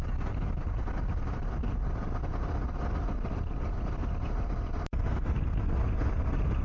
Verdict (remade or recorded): recorded